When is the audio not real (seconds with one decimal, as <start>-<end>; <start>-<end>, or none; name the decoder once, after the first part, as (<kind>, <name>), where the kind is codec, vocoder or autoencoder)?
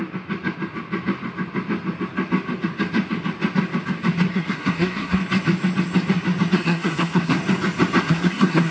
4.3-5.2 (codec, SNAC); 6.5-7.4; 8.0-8.7